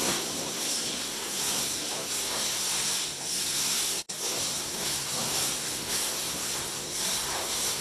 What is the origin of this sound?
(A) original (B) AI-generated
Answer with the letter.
B